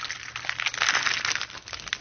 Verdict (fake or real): real